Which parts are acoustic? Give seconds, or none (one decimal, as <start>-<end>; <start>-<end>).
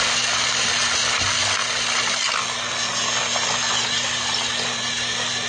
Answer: 0.0-5.5